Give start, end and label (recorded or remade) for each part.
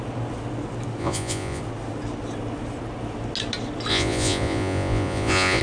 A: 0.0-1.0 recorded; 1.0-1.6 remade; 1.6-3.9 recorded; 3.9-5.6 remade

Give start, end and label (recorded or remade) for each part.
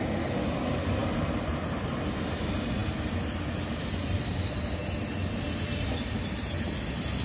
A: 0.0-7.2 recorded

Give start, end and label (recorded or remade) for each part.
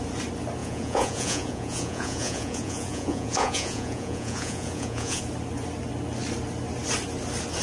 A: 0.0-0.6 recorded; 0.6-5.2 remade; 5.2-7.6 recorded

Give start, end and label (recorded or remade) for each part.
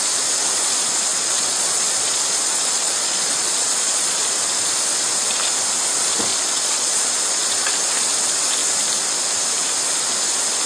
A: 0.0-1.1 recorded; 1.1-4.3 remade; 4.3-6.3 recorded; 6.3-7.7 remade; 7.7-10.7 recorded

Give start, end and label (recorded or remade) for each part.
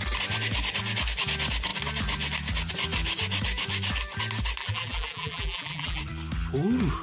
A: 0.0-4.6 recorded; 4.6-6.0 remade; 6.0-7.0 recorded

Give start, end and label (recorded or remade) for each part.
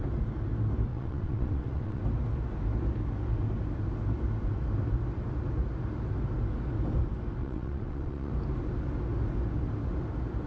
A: 0.0-0.9 recorded; 0.9-2.0 remade; 2.0-7.4 recorded; 7.4-8.3 remade; 8.3-10.5 recorded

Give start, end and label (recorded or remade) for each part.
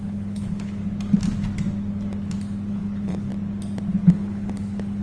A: 0.0-0.8 remade; 0.8-2.7 recorded; 2.7-3.3 remade; 3.3-3.9 recorded; 3.9-5.0 remade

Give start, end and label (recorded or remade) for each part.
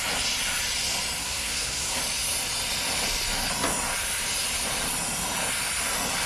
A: 0.0-1.2 recorded; 1.2-2.0 remade; 2.0-6.3 recorded